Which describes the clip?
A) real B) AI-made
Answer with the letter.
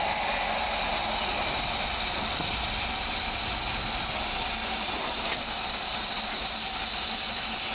A